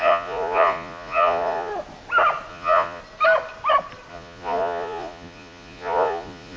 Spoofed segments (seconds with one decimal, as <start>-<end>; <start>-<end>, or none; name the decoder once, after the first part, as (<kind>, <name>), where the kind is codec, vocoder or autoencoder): 0.0-1.7 (vocoder, Vocos); 2.5-3.0; 4.1-6.6